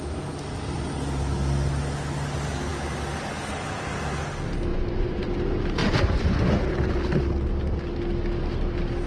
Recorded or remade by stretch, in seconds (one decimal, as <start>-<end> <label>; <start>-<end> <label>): 0.0-4.7 recorded; 4.7-5.3 remade; 5.3-5.8 recorded; 5.8-6.4 remade; 6.4-9.1 recorded